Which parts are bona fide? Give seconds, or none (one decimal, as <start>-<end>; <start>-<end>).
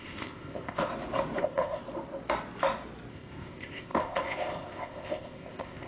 0.9-1.4; 1.8-3.1